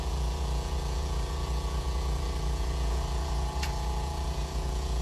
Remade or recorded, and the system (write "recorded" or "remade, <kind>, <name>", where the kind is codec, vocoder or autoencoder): remade, vocoder, Vocos